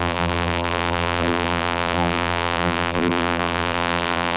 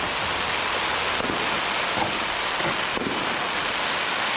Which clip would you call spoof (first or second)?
first